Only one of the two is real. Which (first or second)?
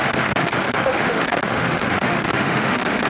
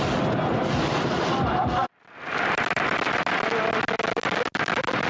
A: second